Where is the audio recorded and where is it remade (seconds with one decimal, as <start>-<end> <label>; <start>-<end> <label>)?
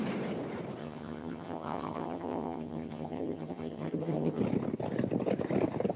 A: 0.0-0.8 recorded; 0.8-4.4 remade; 4.4-6.0 recorded